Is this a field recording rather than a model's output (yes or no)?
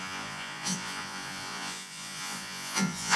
no